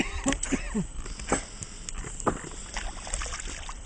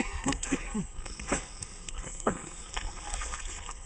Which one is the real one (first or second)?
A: first